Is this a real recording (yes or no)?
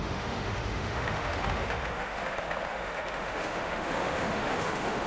no